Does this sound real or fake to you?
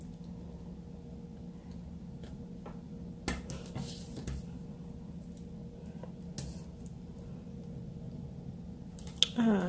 real